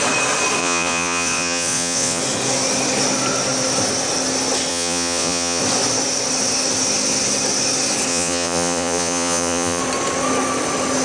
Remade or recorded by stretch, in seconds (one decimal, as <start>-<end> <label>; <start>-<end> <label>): 0.0-0.6 recorded; 0.6-2.2 remade; 2.2-4.7 recorded; 4.7-5.6 remade; 5.6-8.1 recorded; 8.1-9.8 remade; 9.8-11.0 recorded